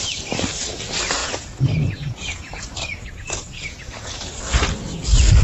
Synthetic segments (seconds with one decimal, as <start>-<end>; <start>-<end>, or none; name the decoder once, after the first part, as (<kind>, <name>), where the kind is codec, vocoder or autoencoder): 1.2-4.4 (vocoder, Vocos)